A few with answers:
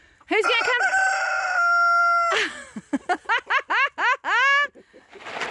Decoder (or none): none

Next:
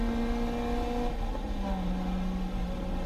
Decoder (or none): none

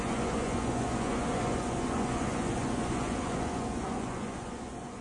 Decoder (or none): vocoder, Vocos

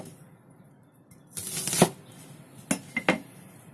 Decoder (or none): none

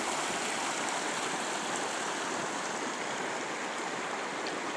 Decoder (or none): none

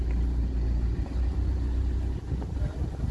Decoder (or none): none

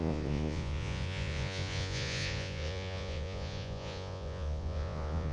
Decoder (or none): vocoder, Vocos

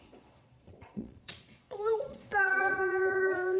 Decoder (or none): vocoder, Vocos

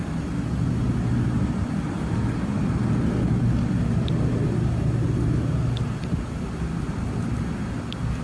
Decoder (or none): none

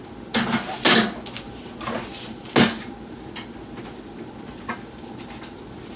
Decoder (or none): none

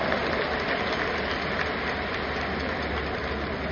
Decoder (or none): none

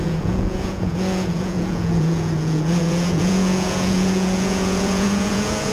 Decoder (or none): vocoder, Vocos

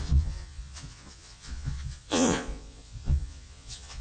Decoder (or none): vocoder, Vocos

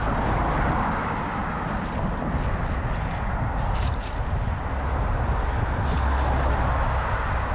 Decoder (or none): none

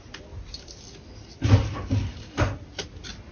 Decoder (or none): none